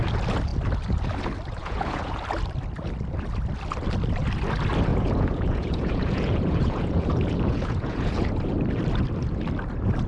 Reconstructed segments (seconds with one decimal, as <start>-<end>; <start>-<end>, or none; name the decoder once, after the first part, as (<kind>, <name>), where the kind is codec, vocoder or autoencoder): 1.6-2.2 (vocoder, Vocos); 4.9-8.3